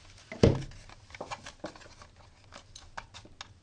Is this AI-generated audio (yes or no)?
no